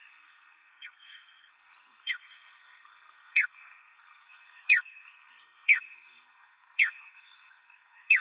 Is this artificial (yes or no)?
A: yes